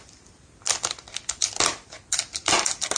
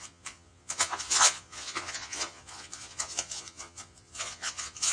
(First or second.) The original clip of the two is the first